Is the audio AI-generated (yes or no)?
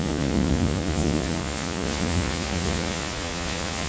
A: yes